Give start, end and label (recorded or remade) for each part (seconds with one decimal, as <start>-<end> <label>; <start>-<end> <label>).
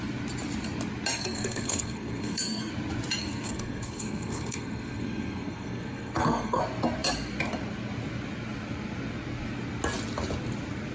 0.0-1.1 recorded; 1.1-2.7 remade; 2.7-3.2 recorded; 3.2-6.6 remade; 6.6-10.9 recorded